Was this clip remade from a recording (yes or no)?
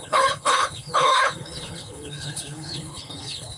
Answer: yes